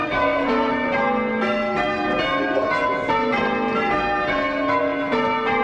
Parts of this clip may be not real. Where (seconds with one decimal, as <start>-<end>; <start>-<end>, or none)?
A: 0.0-0.7